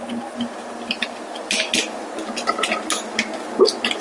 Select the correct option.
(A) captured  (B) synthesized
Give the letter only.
A